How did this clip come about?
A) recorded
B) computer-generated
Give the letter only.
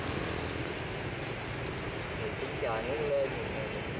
A